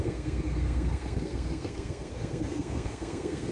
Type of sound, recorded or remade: remade